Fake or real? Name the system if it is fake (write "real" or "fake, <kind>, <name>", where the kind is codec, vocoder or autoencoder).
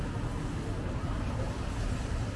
real